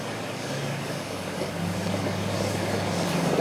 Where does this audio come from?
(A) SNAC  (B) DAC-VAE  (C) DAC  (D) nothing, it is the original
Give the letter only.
C